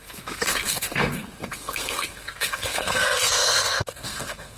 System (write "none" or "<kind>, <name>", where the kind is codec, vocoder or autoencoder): codec, SNAC